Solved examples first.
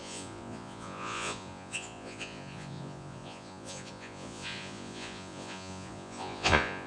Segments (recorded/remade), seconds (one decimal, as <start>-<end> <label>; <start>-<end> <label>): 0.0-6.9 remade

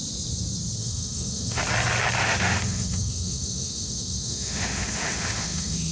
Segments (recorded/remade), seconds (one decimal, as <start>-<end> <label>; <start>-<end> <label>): 0.0-0.8 recorded; 0.8-1.6 remade; 1.6-2.2 recorded; 2.2-5.9 remade

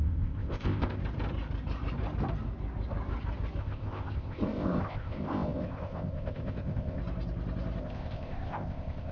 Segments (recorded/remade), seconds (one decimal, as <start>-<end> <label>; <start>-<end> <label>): 0.0-1.0 remade; 1.0-3.6 recorded; 3.6-7.0 remade; 7.0-7.8 recorded; 7.8-9.1 remade